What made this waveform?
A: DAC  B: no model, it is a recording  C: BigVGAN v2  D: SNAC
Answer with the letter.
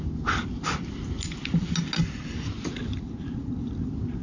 B